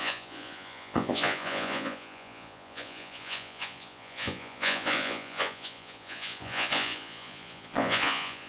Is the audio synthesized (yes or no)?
yes